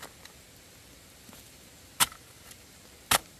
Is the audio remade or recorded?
recorded